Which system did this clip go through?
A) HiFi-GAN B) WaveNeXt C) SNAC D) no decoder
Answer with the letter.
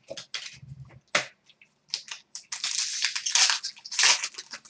D